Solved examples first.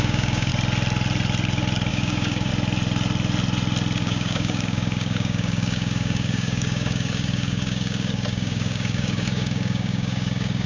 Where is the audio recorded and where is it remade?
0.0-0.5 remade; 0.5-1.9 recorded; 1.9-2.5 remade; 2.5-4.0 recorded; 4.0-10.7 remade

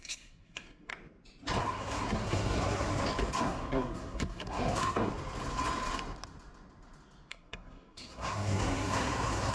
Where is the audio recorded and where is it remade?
0.0-0.9 remade; 0.9-1.6 recorded; 1.6-2.9 remade; 2.9-3.4 recorded; 3.4-5.1 remade; 5.1-7.3 recorded; 7.3-9.5 remade

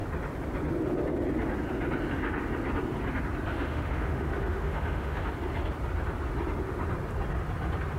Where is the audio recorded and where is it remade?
0.0-3.5 recorded; 3.5-5.3 remade; 5.3-8.0 recorded

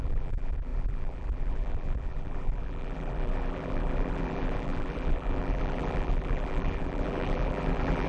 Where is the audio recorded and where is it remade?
0.0-8.1 remade

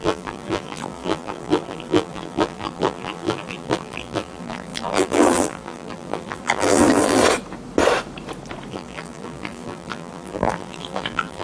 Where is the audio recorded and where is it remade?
0.0-7.2 remade; 7.2-8.7 recorded; 8.7-11.4 remade

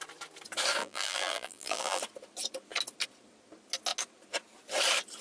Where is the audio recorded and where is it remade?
0.0-0.8 recorded; 0.8-2.0 remade; 2.0-5.2 recorded